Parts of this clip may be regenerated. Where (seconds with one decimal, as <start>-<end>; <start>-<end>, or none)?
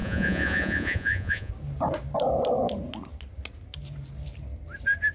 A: 0.0-1.5